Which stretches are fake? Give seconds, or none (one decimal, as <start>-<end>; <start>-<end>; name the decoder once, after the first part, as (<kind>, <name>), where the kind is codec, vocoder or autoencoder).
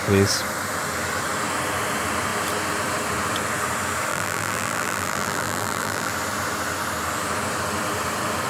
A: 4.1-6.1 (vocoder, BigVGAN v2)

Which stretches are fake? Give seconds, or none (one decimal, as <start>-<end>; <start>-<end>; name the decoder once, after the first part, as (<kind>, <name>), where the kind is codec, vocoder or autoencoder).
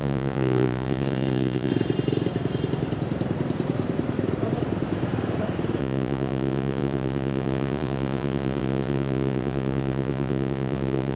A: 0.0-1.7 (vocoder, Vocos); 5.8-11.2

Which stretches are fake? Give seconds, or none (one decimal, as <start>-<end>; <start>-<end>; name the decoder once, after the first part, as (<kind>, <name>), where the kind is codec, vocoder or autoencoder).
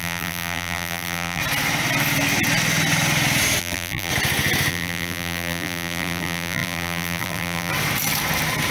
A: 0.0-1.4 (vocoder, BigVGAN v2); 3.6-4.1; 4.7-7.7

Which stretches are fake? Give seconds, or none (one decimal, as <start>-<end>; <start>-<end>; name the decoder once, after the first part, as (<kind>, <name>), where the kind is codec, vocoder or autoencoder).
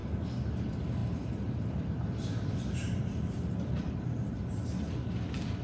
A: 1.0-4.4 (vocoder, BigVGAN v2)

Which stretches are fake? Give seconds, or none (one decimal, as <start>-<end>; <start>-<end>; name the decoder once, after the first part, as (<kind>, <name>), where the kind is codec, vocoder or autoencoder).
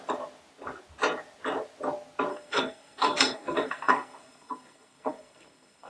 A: 2.3-5.9 (codec, SNAC)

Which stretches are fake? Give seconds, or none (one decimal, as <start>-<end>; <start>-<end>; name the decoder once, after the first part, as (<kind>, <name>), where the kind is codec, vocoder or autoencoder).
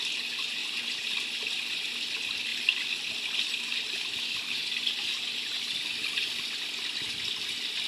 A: none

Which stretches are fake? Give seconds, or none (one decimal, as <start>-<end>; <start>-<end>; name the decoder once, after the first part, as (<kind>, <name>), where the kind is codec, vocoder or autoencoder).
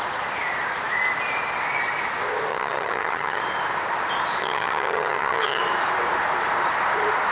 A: 2.5-3.4 (vocoder, HiFi-GAN); 4.4-5.6